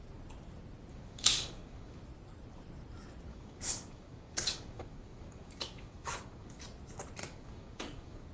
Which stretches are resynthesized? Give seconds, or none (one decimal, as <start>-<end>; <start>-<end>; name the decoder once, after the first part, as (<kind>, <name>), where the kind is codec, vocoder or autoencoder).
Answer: 0.9-2.0 (codec, DAC); 3.3-6.6; 7.2-8.3